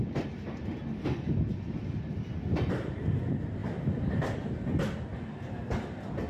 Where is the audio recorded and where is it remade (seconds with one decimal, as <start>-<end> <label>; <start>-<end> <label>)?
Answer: 0.0-1.8 recorded; 1.8-3.0 remade; 3.0-3.6 recorded; 3.6-4.5 remade; 4.5-6.3 recorded